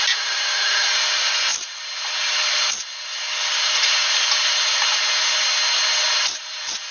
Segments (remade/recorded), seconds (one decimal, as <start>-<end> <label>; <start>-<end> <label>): 0.0-6.9 recorded